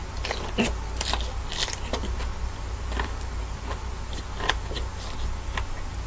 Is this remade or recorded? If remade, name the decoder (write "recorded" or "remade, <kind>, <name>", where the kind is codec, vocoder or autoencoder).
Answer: recorded